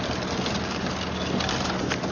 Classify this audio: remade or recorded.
recorded